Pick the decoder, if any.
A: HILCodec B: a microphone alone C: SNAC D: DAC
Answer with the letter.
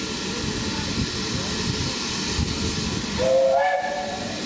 B